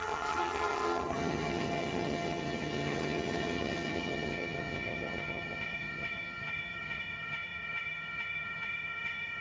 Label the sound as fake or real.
fake